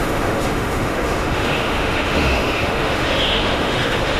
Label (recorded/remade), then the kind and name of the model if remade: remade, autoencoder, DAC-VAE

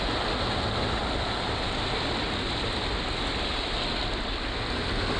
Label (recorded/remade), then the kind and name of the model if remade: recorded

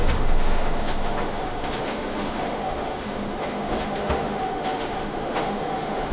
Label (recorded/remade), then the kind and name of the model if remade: remade, autoencoder, DAC-VAE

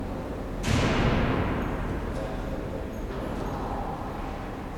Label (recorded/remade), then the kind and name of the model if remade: recorded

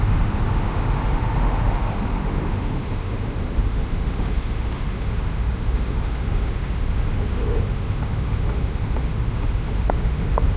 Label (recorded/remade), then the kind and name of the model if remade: remade, autoencoder, DAC-VAE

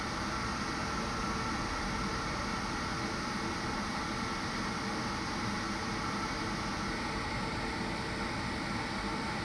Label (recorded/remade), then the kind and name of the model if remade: recorded